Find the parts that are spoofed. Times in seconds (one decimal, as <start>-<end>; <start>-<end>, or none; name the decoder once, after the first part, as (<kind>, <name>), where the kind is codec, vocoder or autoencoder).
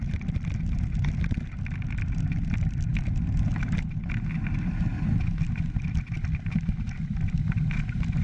none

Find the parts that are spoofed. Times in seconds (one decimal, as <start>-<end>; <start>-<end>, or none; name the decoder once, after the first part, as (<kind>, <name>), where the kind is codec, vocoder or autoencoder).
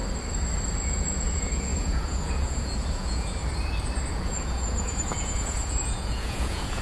0.8-3.4 (vocoder, Vocos); 4.1-6.8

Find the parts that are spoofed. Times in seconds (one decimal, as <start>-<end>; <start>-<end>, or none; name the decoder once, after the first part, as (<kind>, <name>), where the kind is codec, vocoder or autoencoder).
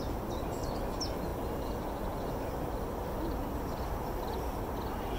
none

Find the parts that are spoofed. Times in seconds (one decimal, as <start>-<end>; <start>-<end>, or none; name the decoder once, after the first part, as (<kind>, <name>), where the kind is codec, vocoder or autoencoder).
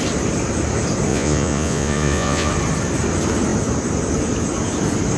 1.1-2.5 (vocoder, Vocos)